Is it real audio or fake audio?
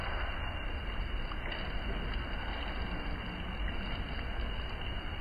real